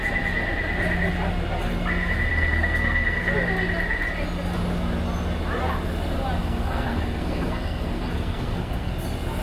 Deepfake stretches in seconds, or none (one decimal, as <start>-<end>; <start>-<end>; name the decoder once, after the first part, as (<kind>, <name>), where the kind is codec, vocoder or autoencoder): 2.3-3.3 (codec, SNAC); 6.4-8.9